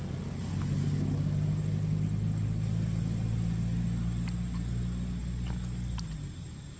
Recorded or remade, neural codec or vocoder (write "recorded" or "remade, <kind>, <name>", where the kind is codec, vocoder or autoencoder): recorded